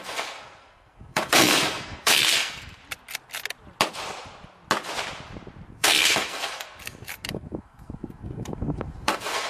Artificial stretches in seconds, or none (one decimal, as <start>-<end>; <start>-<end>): 0.0-2.8; 5.7-9.5